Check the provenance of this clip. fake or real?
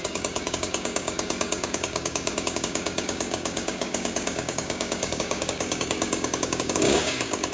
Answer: fake